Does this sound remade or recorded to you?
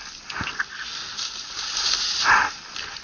recorded